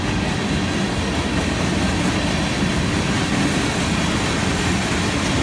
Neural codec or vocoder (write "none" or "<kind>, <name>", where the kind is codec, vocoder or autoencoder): none